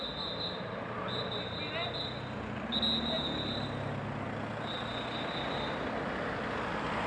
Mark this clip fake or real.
real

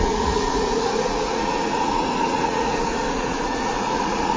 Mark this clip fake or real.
fake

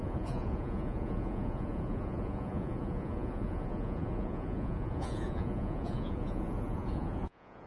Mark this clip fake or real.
fake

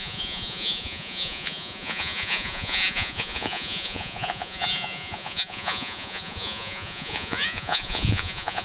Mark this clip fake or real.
fake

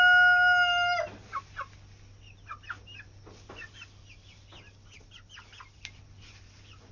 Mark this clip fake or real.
real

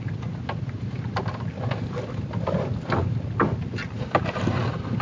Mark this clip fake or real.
real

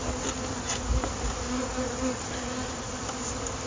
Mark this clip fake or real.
real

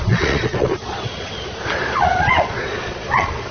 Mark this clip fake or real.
fake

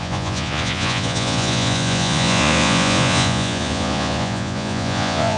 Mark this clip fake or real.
fake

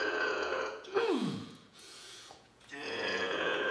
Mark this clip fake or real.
fake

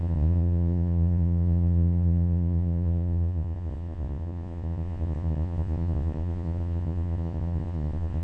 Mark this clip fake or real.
fake